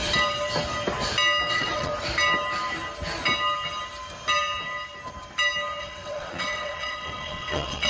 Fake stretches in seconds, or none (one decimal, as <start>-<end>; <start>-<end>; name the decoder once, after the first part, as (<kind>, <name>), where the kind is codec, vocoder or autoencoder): 1.5-1.9 (vocoder, WaveNeXt); 5.8-7.9

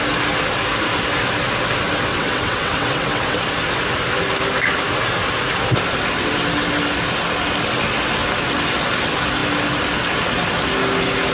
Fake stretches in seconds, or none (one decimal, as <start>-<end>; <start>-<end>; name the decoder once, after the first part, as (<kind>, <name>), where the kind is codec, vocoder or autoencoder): 2.1-3.4 (vocoder, WaveNeXt)

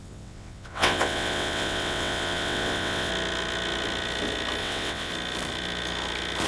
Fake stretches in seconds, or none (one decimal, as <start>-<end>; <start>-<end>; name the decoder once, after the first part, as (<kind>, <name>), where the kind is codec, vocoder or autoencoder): 0.0-3.1 (vocoder, WaveNeXt); 4.6-5.1

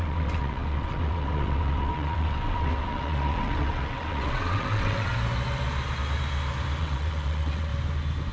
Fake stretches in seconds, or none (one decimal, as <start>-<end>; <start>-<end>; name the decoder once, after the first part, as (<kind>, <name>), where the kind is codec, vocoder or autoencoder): 0.0-5.1 (vocoder, WaveNeXt); 6.8-7.7

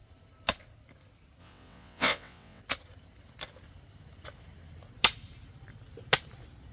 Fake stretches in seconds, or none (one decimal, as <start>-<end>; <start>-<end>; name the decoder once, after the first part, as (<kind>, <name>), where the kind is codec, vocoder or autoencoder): 1.4-2.6 (vocoder, WaveNeXt)

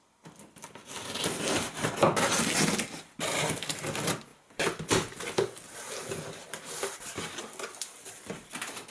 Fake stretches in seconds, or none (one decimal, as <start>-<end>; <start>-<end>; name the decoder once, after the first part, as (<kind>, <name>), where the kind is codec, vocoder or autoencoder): none

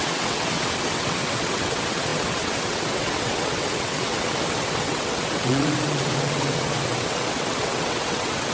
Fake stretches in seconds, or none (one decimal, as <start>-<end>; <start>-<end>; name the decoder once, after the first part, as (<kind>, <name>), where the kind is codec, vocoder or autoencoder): 0.0-8.5 (vocoder, WaveNeXt)